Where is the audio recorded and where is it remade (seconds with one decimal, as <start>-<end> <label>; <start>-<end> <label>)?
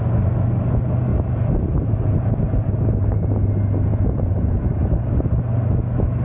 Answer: 0.0-1.1 recorded; 1.1-2.7 remade; 2.7-3.9 recorded; 3.9-4.6 remade; 4.6-6.2 recorded